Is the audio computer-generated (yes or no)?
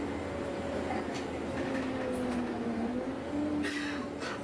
no